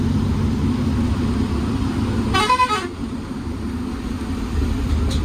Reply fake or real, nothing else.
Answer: real